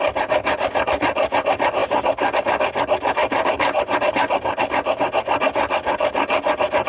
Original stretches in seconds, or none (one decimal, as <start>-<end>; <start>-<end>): 0.0-6.9